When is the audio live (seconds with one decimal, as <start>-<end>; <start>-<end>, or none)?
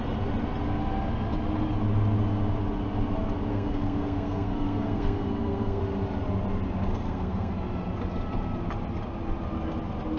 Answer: 0.0-3.5; 5.8-6.9; 7.5-10.2